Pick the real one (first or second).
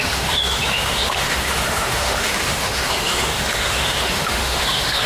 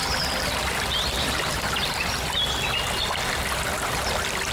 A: second